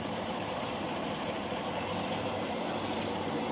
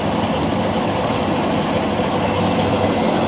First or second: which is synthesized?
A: first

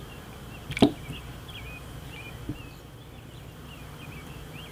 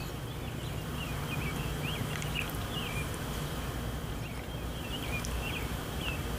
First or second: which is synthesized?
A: first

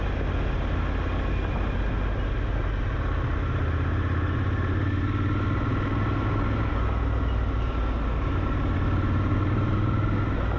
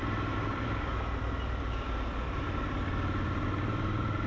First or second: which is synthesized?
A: second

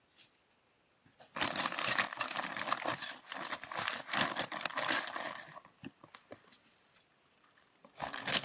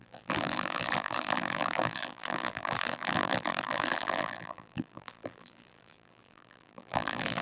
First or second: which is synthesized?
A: second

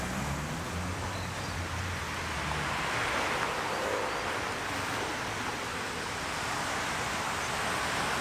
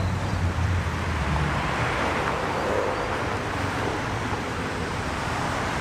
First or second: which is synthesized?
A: second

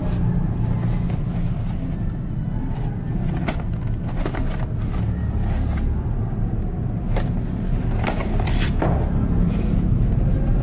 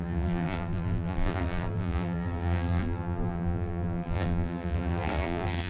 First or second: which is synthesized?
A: second